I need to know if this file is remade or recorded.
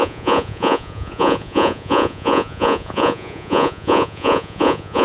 remade